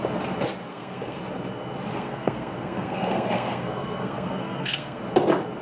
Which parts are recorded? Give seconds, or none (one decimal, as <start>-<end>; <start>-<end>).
0.0-0.7; 1.2-1.9; 5.0-5.6

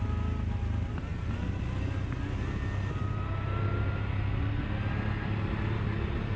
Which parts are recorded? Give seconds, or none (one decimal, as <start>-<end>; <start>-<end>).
0.0-6.4

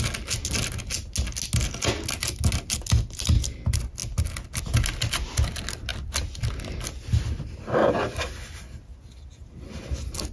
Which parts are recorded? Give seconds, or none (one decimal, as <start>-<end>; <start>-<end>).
0.0-10.3

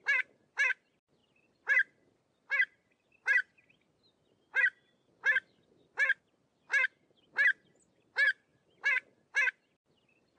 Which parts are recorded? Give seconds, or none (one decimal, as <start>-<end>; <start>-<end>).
0.0-10.4

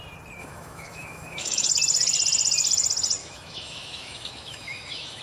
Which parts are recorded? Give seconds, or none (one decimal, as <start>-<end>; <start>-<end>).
0.0-0.4; 1.7-3.2